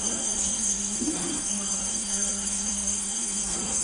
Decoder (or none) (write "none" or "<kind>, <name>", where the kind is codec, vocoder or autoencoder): codec, SNAC